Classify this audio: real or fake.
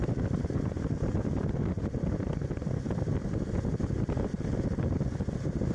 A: real